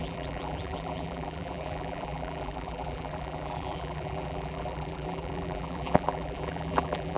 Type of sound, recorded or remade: remade